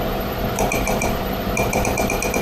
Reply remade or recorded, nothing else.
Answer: remade